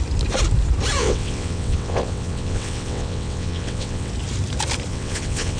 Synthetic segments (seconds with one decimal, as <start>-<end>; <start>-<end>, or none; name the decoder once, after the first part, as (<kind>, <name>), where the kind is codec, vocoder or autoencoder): 1.0-4.1 (vocoder, WaveNeXt); 4.9-5.6